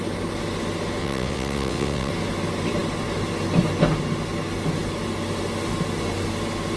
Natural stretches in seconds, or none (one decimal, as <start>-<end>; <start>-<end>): 0.0-1.0; 2.1-6.8